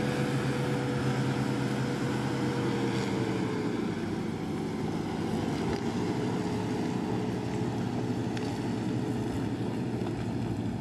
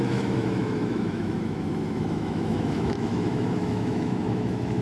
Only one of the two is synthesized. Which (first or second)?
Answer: second